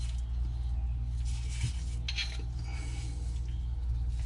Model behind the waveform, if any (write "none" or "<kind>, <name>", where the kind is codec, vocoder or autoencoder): none